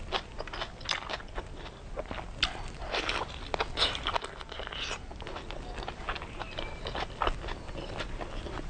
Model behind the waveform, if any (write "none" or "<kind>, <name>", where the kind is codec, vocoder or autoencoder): none